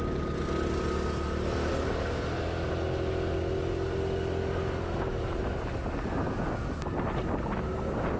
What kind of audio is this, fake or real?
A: real